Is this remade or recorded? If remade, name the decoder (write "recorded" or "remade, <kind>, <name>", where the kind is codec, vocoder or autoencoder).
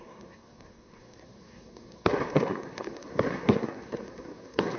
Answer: remade, codec, SNAC